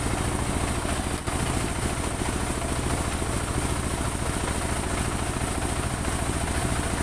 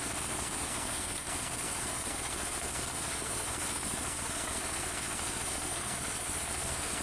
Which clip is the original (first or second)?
first